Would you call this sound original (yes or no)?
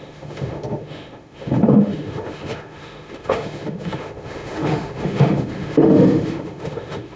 no